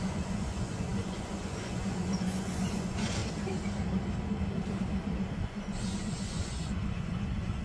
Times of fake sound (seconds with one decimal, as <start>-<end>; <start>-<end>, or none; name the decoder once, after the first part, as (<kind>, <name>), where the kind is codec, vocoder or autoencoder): 0.0-3.2 (vocoder, Vocos); 5.4-7.6